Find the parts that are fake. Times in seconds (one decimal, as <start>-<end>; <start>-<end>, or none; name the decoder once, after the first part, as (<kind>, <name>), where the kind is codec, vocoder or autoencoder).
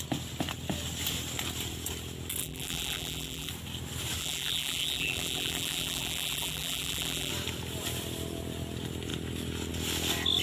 2.4-3.5 (vocoder, BigVGAN v2); 4.2-7.3